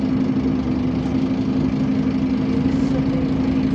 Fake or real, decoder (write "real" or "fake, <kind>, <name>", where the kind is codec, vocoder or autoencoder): real